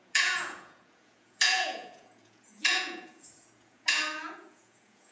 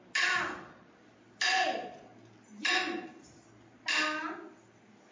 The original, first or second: second